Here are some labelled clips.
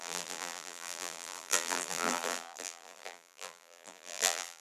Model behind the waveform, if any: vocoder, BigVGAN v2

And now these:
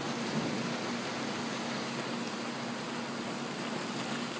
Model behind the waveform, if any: none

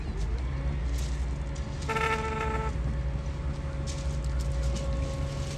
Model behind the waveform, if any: none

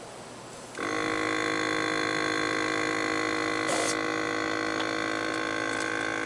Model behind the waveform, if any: none